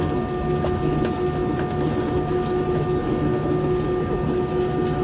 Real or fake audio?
real